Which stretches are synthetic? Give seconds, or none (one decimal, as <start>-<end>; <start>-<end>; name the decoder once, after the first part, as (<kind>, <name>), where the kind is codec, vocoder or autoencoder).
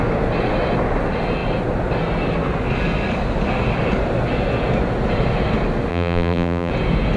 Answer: 5.9-6.7 (vocoder, BigVGAN v2)